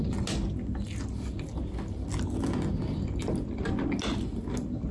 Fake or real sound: real